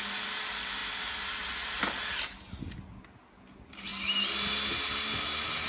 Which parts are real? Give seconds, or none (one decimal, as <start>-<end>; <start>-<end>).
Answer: 0.0-5.7